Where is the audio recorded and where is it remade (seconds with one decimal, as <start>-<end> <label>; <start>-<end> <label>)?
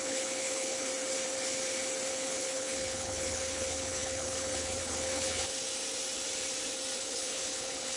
0.0-0.9 remade; 0.9-2.1 recorded; 2.1-5.5 remade; 5.5-7.0 recorded; 7.0-8.0 remade